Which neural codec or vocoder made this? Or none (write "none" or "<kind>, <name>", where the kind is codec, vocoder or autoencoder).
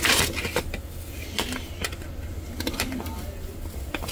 none